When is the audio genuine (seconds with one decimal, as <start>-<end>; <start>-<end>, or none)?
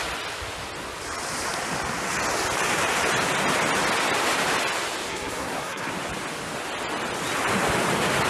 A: 0.0-5.1; 5.9-8.3